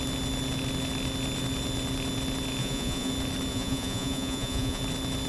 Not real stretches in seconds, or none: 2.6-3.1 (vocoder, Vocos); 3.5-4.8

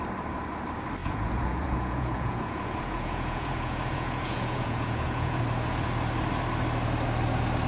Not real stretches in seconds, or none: 1.0-5.4 (vocoder, Vocos)

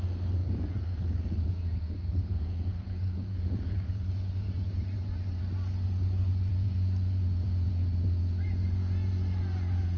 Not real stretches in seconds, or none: 0.4-5.4 (vocoder, Vocos); 6.5-10.0